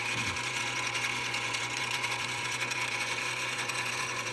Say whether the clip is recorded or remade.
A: remade